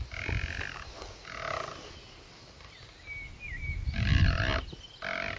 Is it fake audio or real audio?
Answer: real